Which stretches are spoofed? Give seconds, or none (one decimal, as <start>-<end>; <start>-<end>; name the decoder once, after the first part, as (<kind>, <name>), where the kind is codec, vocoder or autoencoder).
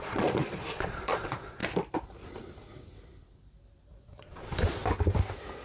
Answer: 0.0-1.6 (vocoder, Vocos); 3.9-4.8